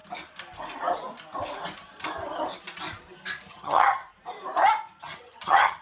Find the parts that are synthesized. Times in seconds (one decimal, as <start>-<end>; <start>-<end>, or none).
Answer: 3.5-4.0; 5.0-5.8